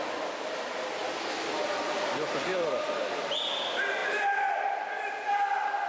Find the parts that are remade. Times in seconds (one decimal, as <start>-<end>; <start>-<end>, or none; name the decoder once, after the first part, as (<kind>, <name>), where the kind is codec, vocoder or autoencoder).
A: 1.0-1.8 (vocoder, BigVGAN v2); 2.5-3.3; 4.0-5.1